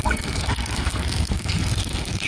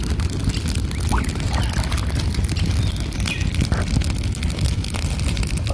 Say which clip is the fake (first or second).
first